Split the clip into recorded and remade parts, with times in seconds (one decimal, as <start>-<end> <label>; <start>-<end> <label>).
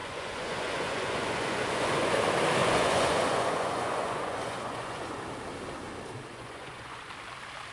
0.0-2.2 remade; 2.2-2.6 recorded; 2.6-5.2 remade; 5.2-6.3 recorded; 6.3-7.1 remade; 7.1-7.7 recorded